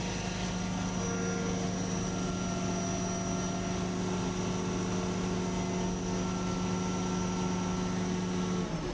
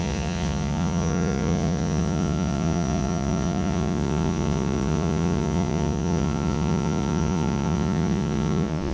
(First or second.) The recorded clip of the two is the first